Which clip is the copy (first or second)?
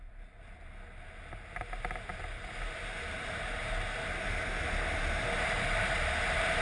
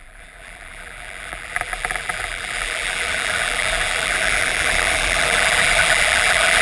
second